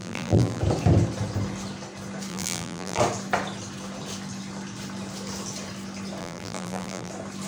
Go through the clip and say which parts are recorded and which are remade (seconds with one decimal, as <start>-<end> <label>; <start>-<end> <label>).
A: 0.0-0.6 remade; 0.6-2.3 recorded; 2.3-3.0 remade; 3.0-6.2 recorded; 6.2-7.1 remade; 7.1-7.5 recorded